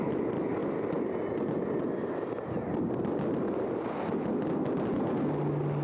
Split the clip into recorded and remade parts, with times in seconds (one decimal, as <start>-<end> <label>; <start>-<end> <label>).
0.0-5.8 recorded